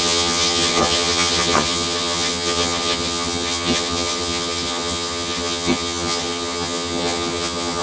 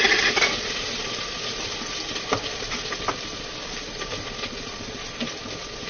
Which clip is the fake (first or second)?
first